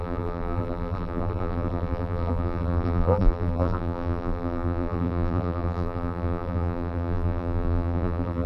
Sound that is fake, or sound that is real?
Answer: fake